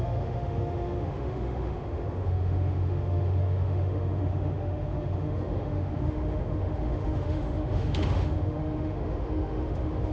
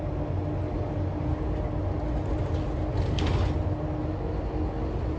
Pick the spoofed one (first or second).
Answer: first